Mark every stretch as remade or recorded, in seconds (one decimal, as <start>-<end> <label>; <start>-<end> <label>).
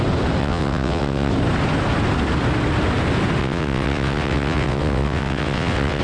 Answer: 0.0-0.4 recorded; 0.4-1.3 remade; 1.3-3.4 recorded; 3.4-6.0 remade